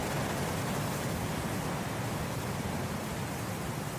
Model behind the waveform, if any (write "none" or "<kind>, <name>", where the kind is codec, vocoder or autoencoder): none